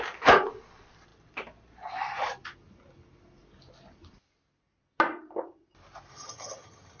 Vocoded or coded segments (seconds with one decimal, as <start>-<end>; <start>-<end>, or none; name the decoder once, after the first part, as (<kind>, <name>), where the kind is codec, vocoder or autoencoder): 6.1-7.0 (vocoder, HiFi-GAN)